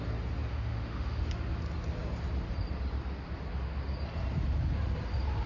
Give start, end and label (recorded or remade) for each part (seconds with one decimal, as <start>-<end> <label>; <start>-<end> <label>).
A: 0.0-0.5 recorded; 0.5-1.2 remade; 1.2-5.5 recorded